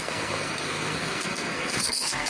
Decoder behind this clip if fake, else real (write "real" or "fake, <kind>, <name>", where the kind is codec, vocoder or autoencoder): fake, codec, SNAC